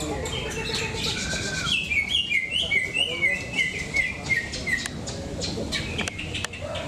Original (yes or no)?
yes